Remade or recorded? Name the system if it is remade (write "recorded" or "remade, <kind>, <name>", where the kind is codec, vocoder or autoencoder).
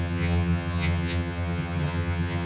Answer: remade, vocoder, HiFi-GAN